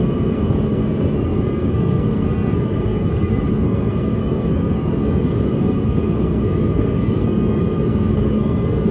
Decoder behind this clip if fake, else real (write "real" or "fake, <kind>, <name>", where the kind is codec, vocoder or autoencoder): fake, codec, SNAC